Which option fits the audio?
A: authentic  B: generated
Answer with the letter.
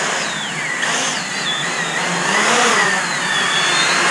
A